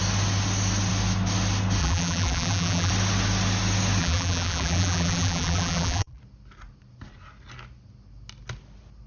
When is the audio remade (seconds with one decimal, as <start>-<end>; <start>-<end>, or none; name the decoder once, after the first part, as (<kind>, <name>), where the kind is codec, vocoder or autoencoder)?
1.8-2.9 (vocoder, BigVGAN v2); 4.0-6.2